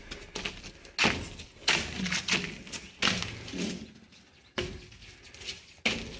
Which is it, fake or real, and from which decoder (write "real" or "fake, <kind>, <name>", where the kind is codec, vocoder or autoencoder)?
real